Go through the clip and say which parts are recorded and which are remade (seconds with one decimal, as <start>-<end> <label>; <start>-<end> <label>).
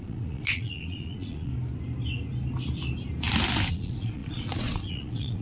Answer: 0.0-1.5 remade; 1.5-3.7 recorded; 3.7-5.4 remade